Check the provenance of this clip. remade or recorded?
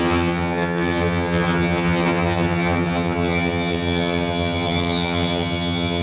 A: remade